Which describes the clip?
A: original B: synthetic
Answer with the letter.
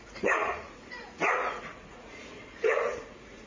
B